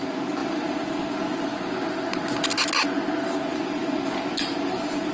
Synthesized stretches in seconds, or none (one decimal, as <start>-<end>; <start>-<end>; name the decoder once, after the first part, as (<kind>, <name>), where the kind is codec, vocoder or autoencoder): none